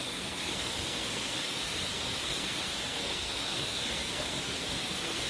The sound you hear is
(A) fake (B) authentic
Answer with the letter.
A